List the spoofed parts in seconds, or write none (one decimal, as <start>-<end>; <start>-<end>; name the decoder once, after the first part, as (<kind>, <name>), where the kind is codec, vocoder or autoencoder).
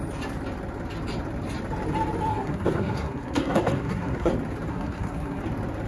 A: 2.3-4.3 (codec, SNAC); 4.7-5.4